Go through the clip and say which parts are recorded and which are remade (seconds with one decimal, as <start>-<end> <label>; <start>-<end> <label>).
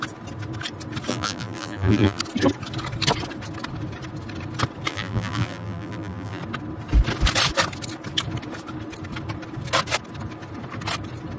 0.0-1.1 recorded; 1.1-2.2 remade; 2.2-4.9 recorded; 4.9-6.4 remade; 6.4-11.4 recorded